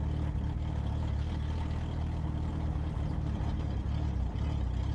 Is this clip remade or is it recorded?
recorded